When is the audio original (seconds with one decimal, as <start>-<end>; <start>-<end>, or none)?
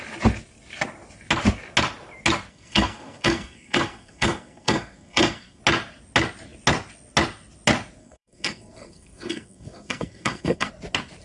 0.0-2.5; 5.6-8.0; 10.7-11.2